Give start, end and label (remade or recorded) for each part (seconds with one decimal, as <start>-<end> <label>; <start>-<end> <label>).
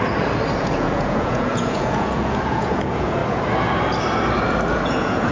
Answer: 0.0-0.6 recorded; 0.6-3.2 remade; 3.2-4.7 recorded; 4.7-5.3 remade